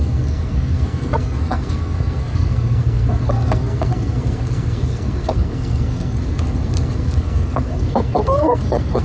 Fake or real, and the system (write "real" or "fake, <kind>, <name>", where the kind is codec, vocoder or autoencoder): fake, codec, SNAC